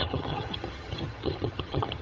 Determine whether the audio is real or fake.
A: fake